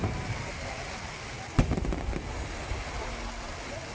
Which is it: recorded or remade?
recorded